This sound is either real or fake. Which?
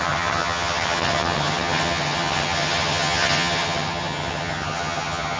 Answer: fake